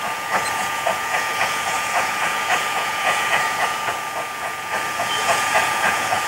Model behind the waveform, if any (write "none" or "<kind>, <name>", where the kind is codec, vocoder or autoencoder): vocoder, Vocos